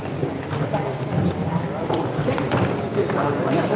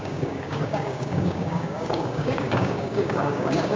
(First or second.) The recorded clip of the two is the first